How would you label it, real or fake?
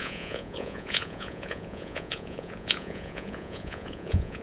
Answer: fake